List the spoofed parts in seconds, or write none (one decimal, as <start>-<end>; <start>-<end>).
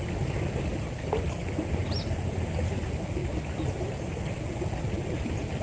none